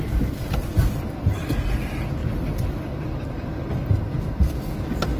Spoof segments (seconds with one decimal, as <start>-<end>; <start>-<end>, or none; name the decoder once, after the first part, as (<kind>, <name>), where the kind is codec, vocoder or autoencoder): none